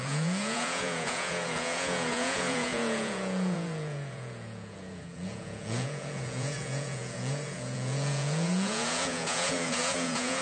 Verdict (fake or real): fake